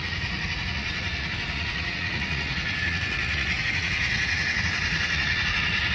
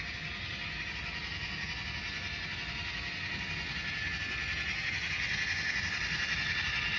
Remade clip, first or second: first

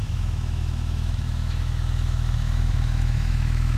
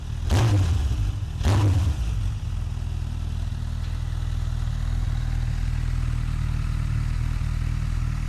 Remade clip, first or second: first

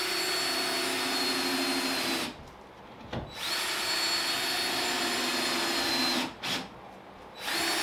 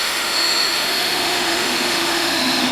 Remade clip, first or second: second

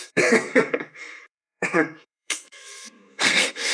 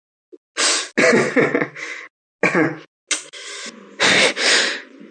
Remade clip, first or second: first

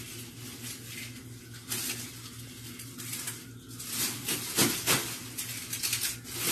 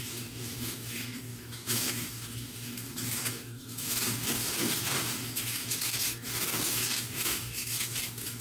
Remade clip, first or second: second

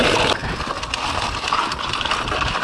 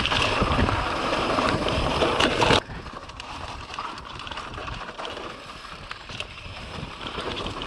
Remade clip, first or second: second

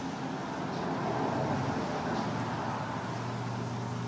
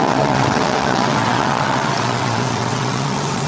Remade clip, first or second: second